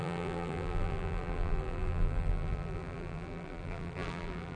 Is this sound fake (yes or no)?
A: yes